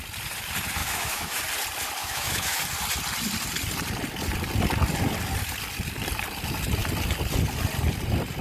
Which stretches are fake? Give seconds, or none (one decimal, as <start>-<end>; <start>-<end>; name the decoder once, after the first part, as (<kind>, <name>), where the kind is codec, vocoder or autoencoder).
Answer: 0.8-1.4 (autoencoder, DAC-VAE); 2.0-2.6

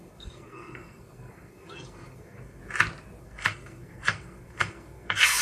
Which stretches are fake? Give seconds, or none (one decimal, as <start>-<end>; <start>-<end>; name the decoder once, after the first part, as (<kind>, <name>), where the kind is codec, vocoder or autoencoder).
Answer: 0.0-2.6 (codec, SNAC); 3.2-5.4